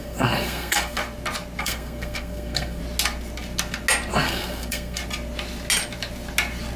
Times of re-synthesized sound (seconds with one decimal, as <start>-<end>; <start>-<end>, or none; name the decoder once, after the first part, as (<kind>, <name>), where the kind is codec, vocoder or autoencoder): 0.0-1.0 (codec, SNAC); 1.6-2.8; 4.1-5.0